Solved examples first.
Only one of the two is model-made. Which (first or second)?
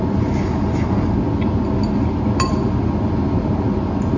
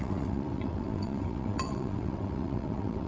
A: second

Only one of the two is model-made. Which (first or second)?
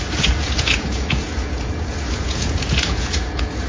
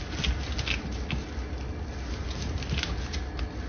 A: first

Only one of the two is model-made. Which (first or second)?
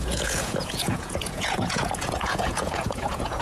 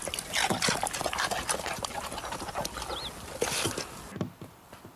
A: first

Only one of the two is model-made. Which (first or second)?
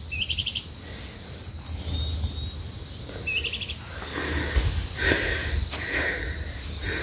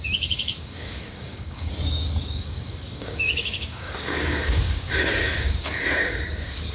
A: second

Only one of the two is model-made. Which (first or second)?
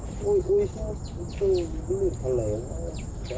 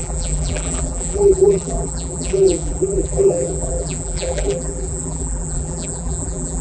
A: second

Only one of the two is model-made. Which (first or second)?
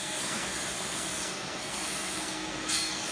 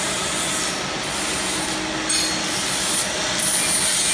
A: first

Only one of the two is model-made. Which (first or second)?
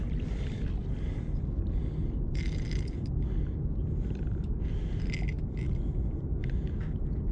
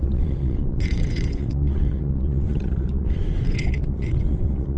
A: second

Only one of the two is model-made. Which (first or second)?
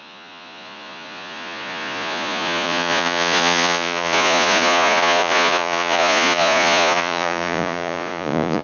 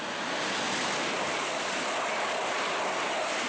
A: first